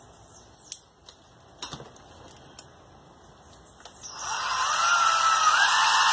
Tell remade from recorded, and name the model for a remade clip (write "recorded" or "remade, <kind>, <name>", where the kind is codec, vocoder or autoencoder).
recorded